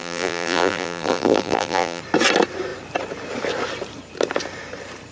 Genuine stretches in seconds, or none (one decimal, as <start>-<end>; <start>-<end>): 2.0-5.1